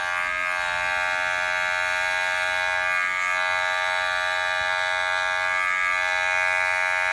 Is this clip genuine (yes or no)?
yes